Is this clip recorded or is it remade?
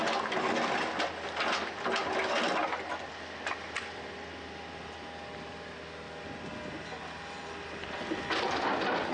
recorded